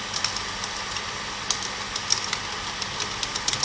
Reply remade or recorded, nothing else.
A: recorded